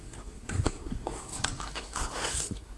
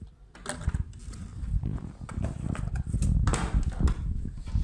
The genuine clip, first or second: second